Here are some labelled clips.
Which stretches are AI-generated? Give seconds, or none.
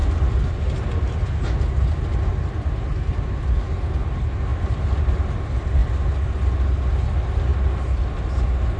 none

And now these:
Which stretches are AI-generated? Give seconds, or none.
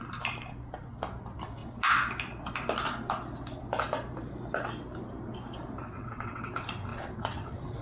5.9-6.5 (vocoder, WaveNeXt); 6.9-7.8